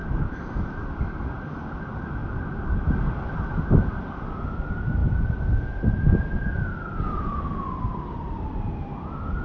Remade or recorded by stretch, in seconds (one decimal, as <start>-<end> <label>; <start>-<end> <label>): 0.0-5.0 recorded; 5.0-8.4 remade; 8.4-9.4 recorded